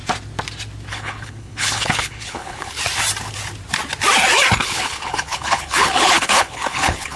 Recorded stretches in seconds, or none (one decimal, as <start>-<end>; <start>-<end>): 0.0-0.9; 2.8-4.6